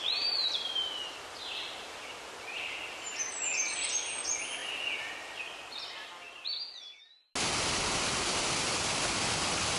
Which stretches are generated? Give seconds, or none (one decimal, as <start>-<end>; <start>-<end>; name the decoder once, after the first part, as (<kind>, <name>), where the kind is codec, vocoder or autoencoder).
none